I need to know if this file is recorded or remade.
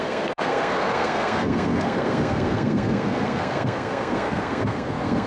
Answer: remade